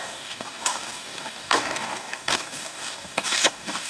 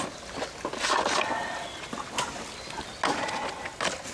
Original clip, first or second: second